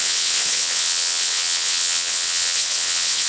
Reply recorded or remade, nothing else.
remade